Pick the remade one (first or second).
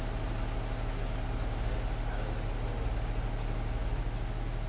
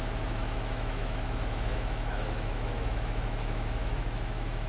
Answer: second